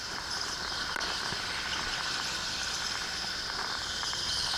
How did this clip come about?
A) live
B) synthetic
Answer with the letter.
B